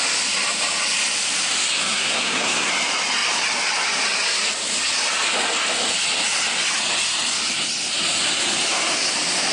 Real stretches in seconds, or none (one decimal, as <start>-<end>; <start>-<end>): 0.0-1.8; 2.7-9.5